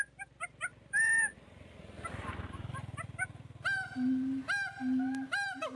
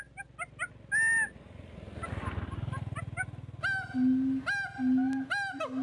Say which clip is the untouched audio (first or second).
second